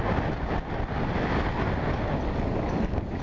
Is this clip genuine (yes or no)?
yes